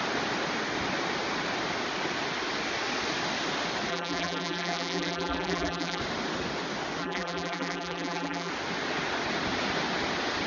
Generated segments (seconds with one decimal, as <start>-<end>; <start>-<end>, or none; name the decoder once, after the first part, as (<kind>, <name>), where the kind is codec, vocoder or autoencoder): 3.9-6.0 (vocoder, BigVGAN v2); 7.0-8.5